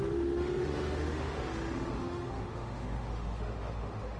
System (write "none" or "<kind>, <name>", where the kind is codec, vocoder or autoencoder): autoencoder, DAC-VAE